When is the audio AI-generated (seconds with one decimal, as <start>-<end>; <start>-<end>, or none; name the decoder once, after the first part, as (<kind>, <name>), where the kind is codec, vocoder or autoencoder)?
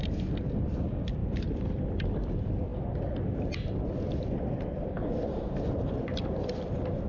1.2-1.8 (vocoder, BigVGAN v2)